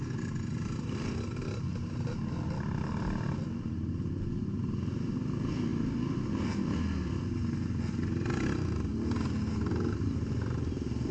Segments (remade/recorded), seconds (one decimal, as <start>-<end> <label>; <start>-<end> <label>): 0.0-11.1 recorded